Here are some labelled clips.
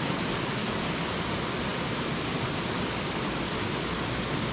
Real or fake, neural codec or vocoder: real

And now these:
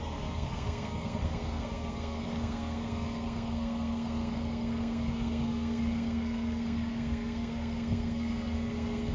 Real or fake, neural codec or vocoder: fake, codec, SNAC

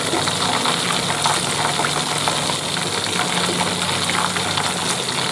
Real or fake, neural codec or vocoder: real